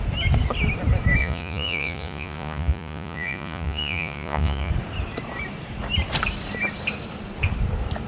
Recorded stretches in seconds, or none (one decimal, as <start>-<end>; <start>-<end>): 0.0-1.2; 4.7-8.1